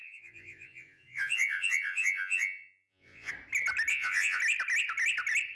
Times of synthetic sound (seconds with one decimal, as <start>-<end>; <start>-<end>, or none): 0.0-3.3; 3.9-4.4